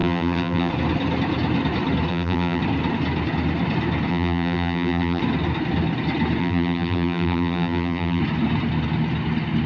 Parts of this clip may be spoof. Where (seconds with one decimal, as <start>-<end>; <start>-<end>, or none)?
0.0-0.7; 2.1-2.6; 4.1-5.2; 6.4-8.2